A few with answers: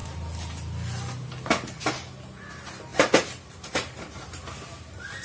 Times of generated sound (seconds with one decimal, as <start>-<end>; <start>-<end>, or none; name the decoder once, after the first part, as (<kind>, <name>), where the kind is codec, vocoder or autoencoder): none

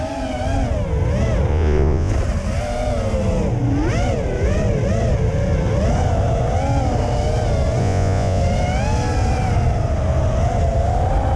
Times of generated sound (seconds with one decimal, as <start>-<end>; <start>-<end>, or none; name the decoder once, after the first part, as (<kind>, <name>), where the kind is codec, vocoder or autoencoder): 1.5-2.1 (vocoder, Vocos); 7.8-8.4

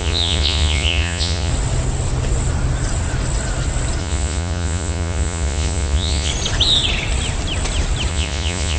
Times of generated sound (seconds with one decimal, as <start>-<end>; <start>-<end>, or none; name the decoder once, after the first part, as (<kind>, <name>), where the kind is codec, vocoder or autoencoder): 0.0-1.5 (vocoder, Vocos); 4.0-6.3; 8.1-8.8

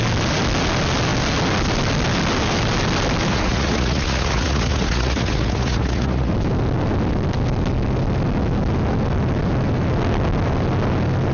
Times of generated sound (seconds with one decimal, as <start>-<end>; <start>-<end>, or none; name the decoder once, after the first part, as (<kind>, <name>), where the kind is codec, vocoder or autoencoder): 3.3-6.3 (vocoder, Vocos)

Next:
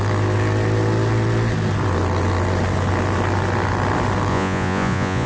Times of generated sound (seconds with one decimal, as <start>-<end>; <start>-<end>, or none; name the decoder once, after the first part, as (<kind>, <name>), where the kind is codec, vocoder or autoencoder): 4.3-5.3 (vocoder, Vocos)